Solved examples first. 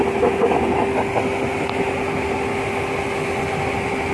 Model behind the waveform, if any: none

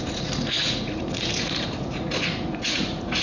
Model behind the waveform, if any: vocoder, Vocos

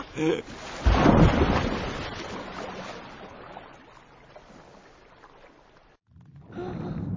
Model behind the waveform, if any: none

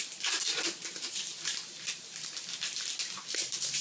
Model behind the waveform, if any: none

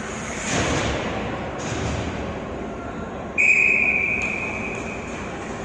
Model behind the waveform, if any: vocoder, BigVGAN v2